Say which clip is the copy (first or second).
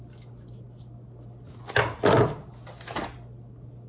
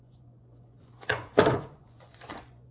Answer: second